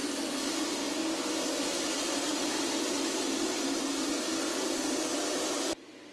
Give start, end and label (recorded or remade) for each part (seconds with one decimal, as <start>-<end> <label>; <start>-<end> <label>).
0.0-0.5 remade; 0.5-2.3 recorded; 2.3-6.1 remade